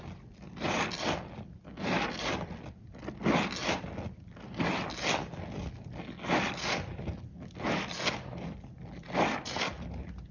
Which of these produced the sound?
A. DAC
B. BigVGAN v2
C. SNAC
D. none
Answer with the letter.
D